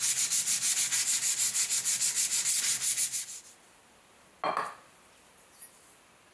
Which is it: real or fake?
real